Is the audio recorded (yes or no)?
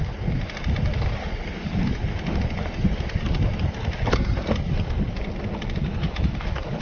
yes